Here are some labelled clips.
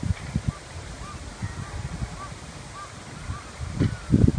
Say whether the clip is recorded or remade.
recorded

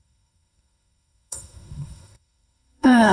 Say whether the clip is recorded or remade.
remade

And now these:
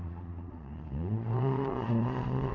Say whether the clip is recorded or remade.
remade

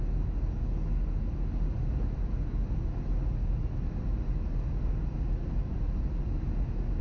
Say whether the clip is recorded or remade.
recorded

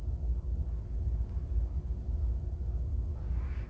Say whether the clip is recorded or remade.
recorded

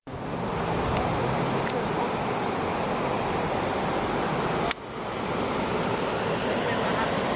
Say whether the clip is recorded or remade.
recorded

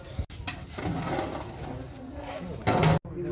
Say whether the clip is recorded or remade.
recorded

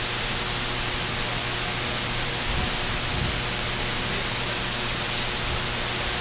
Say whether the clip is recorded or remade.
recorded